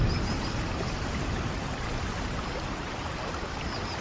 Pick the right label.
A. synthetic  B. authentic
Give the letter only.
B